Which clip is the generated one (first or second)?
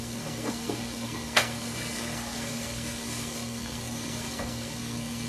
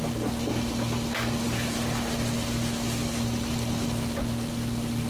first